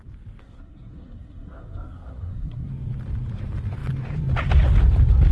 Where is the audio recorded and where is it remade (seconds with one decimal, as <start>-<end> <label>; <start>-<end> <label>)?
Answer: 0.0-0.4 recorded; 0.4-2.7 remade; 2.7-5.3 recorded